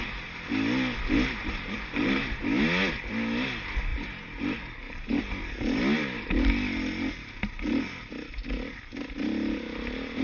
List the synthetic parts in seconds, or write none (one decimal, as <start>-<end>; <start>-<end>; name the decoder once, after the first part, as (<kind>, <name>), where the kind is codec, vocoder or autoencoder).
1.4-2.4 (vocoder, BigVGAN v2); 3.9-5.2